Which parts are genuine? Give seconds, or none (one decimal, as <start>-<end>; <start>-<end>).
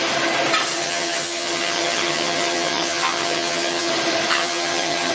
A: 0.0-0.8; 3.9-4.3